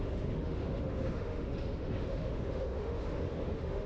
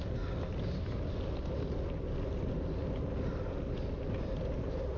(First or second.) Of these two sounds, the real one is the second